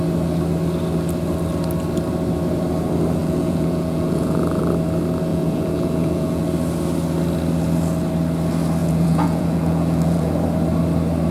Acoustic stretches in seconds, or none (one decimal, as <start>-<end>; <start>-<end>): 0.0-3.2; 4.7-5.3; 6.4-8.8; 10.3-11.3